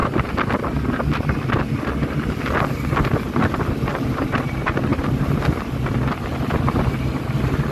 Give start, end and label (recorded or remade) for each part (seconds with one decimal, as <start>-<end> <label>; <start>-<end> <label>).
0.0-3.9 recorded; 3.9-4.4 remade; 4.4-4.9 recorded; 4.9-5.4 remade; 5.4-7.7 recorded